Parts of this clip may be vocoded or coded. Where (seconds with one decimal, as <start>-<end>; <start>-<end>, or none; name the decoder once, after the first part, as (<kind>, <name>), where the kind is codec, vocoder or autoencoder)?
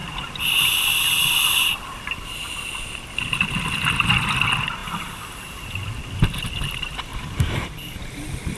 none